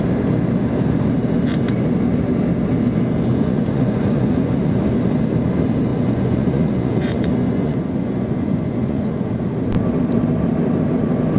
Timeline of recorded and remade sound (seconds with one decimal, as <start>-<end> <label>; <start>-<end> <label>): 0.0-3.3 recorded; 3.3-4.8 remade; 4.8-5.9 recorded; 5.9-9.3 remade; 9.3-11.4 recorded